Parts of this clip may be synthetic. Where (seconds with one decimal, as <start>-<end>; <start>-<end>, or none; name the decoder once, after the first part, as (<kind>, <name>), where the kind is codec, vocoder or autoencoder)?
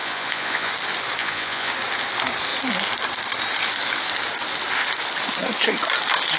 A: 0.0-0.7 (vocoder, Vocos); 1.2-1.7